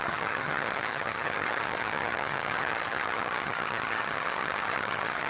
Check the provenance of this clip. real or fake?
fake